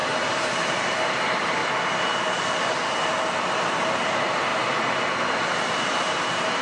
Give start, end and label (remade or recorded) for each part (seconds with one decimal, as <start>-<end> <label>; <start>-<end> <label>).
0.0-1.6 remade; 1.6-3.7 recorded; 3.7-4.5 remade; 4.5-5.9 recorded; 5.9-6.6 remade